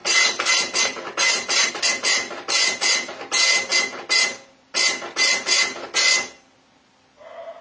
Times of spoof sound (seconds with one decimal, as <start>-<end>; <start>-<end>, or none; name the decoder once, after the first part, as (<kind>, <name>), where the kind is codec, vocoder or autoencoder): none